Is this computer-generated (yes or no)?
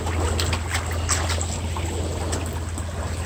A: no